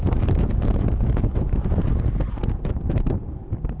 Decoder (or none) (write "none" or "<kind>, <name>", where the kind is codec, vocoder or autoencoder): vocoder, BigVGAN v2